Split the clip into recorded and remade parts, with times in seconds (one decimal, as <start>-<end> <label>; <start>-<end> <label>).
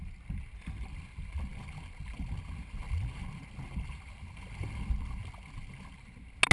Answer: 0.0-6.5 recorded